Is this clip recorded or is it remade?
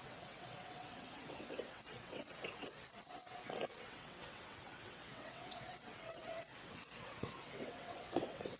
remade